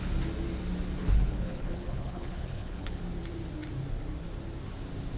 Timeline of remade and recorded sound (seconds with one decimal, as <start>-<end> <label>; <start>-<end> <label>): 0.0-1.0 recorded; 1.0-3.0 remade; 3.0-5.2 recorded